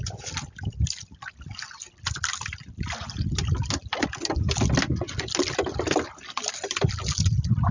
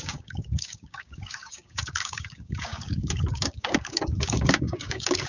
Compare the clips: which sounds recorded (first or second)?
first